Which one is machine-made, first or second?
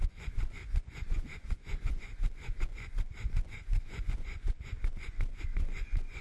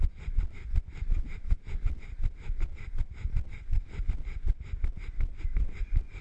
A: first